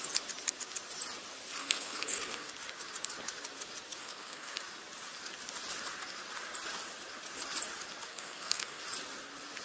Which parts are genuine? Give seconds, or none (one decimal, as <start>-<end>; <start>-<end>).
0.0-1.6; 2.5-4.0; 4.6-8.1; 8.8-9.6